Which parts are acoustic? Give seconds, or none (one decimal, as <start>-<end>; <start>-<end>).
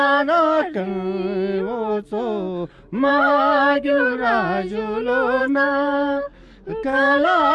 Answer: 0.9-3.1; 4.2-5.4